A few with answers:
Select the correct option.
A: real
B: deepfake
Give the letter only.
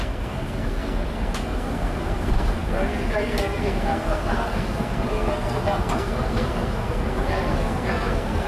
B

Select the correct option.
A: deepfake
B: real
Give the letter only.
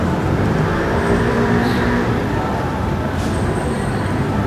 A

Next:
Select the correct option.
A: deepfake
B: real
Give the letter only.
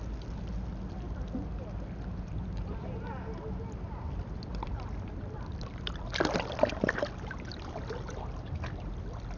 B